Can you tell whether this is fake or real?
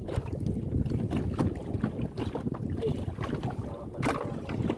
real